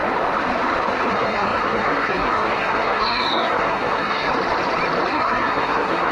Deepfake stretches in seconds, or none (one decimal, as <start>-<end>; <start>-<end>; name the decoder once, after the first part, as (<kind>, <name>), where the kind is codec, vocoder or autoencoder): 1.1-4.3 (codec, SNAC); 5.1-6.1